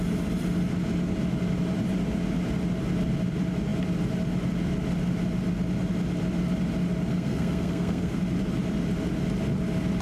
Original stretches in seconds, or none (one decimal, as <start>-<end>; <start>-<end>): 0.0-7.1; 8.2-10.0